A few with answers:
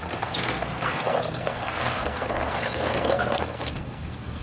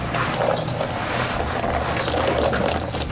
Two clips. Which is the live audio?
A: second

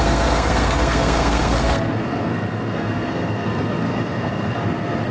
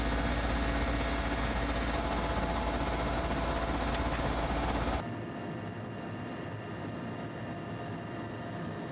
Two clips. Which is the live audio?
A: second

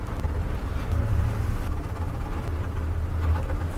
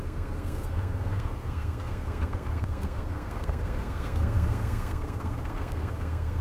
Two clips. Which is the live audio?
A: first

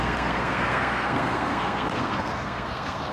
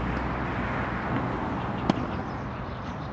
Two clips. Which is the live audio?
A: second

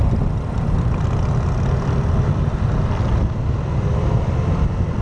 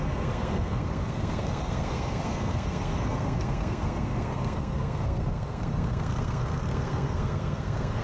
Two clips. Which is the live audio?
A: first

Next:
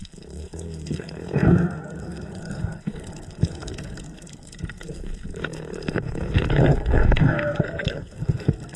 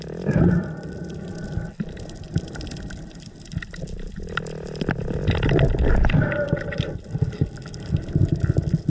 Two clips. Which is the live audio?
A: second